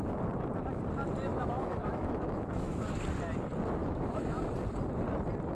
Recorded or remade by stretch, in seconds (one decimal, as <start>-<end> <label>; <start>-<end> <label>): 0.0-1.3 recorded; 1.3-3.0 remade; 3.0-3.8 recorded; 3.8-4.4 remade; 4.4-5.5 recorded